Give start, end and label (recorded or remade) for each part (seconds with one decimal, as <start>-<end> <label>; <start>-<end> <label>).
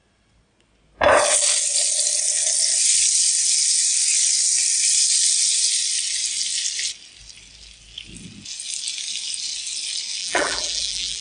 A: 0.0-10.2 recorded; 10.2-11.2 remade